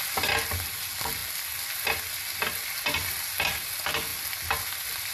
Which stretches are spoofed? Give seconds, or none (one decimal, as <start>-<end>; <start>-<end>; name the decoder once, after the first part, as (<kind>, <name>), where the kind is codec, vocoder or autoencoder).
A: none